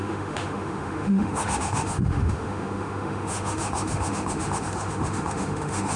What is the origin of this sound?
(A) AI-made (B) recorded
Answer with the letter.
A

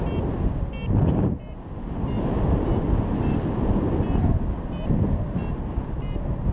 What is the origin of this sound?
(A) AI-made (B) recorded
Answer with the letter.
B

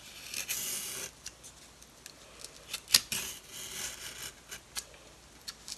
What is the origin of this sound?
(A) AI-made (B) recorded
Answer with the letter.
B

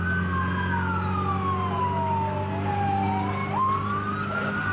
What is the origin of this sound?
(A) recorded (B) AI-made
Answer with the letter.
A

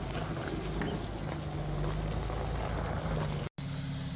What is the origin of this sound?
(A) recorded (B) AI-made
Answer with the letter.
A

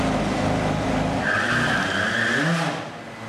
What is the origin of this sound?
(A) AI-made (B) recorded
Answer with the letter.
B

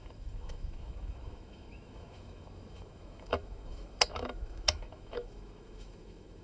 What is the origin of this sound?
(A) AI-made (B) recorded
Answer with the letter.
A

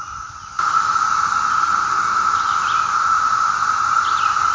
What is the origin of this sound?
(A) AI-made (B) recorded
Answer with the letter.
B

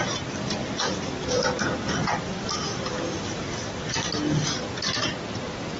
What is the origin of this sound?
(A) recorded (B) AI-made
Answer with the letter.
A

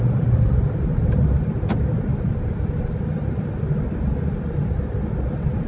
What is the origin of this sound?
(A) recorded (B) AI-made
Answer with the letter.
A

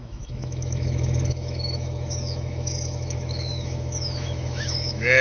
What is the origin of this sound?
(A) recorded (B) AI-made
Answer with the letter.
B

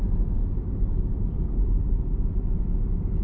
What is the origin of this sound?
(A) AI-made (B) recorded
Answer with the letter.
B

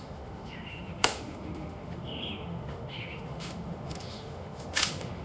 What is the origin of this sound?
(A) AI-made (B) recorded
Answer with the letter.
A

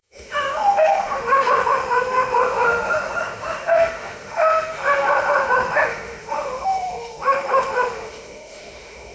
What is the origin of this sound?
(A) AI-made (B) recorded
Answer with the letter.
A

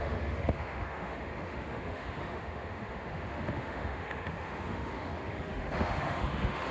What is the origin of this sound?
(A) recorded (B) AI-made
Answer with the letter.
B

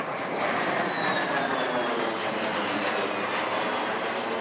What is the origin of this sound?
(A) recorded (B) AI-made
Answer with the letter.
A